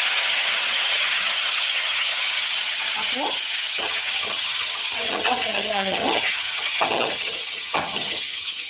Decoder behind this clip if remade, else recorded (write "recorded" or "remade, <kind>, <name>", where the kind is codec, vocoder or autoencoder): remade, vocoder, HiFi-GAN